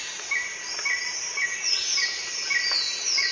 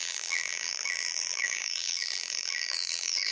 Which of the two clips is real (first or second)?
first